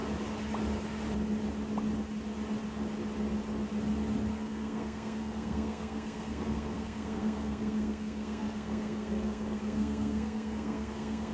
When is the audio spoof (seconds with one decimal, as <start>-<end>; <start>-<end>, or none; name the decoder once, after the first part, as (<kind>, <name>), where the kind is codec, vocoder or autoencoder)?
4.3-11.3 (codec, SNAC)